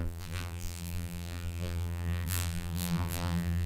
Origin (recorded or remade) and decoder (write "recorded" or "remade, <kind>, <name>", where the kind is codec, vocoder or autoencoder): remade, vocoder, BigVGAN v2